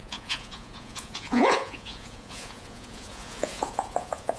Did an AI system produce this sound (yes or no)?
yes